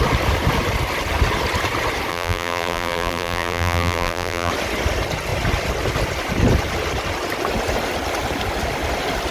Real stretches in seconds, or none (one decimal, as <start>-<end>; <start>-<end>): 0.0-2.1; 4.5-9.3